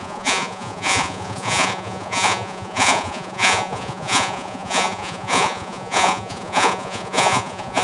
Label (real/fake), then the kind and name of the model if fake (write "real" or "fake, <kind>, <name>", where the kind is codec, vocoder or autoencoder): fake, vocoder, Vocos